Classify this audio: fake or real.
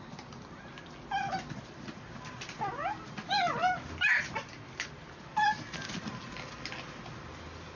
real